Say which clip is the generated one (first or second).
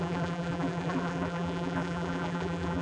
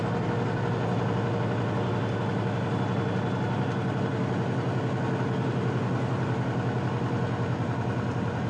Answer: first